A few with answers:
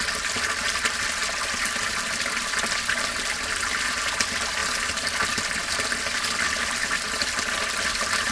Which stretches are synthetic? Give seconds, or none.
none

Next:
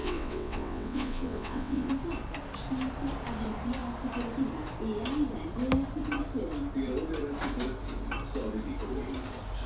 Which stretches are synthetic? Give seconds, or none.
0.0-1.9 (vocoder, WaveNeXt)

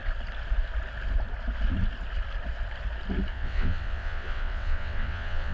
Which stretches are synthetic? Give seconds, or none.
3.3-5.5 (vocoder, WaveNeXt)

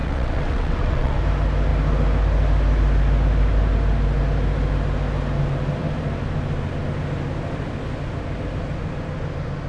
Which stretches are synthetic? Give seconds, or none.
0.0-1.2 (vocoder, WaveNeXt)

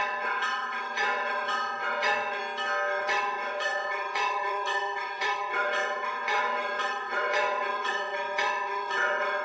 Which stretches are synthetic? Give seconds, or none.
0.0-2.4 (vocoder, WaveNeXt); 3.0-9.4